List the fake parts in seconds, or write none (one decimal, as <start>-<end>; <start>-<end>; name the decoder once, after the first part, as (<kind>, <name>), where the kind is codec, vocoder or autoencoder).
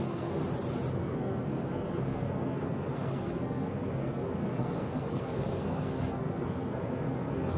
0.0-0.4 (codec, SNAC); 0.9-7.6